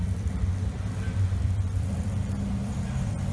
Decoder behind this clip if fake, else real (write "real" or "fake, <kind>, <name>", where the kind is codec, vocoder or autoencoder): fake, vocoder, BigVGAN v2